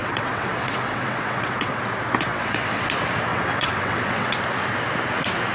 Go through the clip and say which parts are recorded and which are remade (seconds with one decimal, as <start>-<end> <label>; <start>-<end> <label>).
0.0-1.8 remade; 1.8-2.3 recorded; 2.3-2.8 remade; 2.8-3.3 recorded; 3.3-4.4 remade; 4.4-5.5 recorded